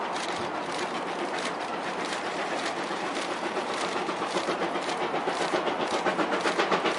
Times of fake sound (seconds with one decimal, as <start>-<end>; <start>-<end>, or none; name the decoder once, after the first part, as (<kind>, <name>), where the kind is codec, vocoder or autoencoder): 1.7-5.9 (vocoder, BigVGAN v2)